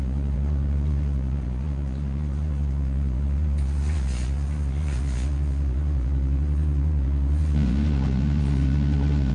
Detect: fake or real fake